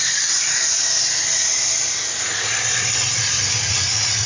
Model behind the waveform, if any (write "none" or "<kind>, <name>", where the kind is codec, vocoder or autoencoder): none